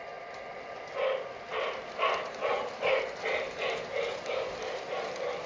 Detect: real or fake real